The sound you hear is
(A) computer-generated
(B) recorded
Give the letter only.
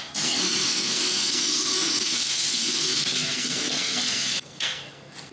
A